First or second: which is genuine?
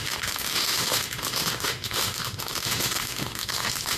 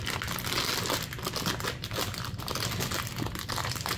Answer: second